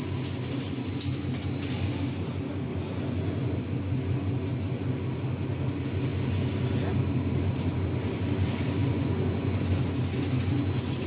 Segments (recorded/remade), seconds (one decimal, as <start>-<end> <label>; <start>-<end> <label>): 0.0-2.7 recorded; 2.7-3.6 remade; 3.6-8.8 recorded; 8.8-9.8 remade; 9.8-11.1 recorded